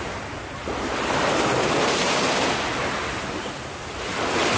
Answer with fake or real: real